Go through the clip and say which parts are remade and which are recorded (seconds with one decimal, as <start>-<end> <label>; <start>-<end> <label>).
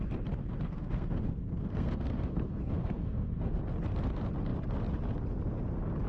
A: 0.0-0.4 recorded; 0.4-3.6 remade; 3.6-6.1 recorded